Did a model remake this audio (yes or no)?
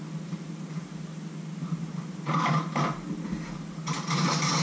no